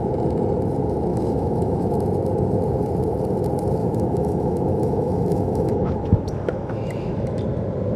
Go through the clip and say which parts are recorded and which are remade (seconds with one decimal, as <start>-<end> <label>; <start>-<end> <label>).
0.0-1.1 recorded; 1.1-1.9 remade; 1.9-3.8 recorded; 3.8-7.4 remade; 7.4-8.0 recorded